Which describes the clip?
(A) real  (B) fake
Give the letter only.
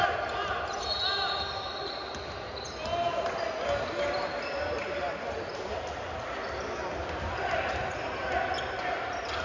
A